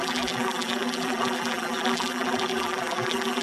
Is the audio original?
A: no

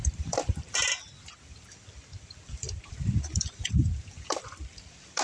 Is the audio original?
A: no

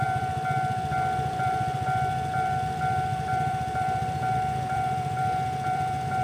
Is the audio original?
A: no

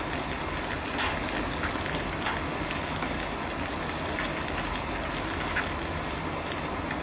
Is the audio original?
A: yes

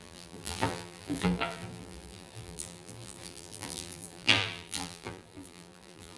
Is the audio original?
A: no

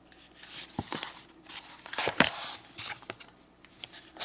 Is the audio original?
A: yes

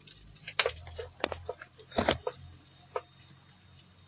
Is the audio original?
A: no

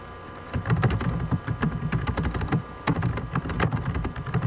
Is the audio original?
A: no